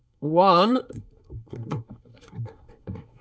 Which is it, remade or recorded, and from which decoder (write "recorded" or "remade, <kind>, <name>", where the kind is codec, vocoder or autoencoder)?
remade, codec, SNAC